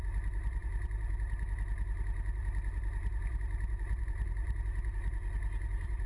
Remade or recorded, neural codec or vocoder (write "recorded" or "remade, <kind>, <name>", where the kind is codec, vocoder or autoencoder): remade, vocoder, BigVGAN v2